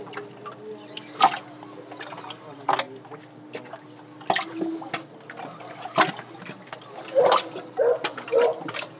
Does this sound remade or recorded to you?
recorded